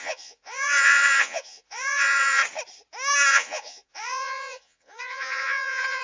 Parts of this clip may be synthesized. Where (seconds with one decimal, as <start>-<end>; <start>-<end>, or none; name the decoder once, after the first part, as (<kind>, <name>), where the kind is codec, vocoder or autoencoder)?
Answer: 0.0-2.4 (vocoder, Vocos); 3.3-6.0